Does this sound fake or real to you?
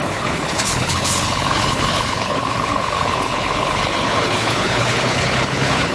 fake